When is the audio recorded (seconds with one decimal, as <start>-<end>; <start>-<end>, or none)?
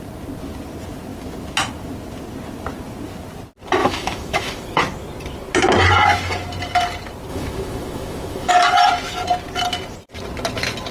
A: 0.0-3.8; 4.8-7.3; 8.5-10.9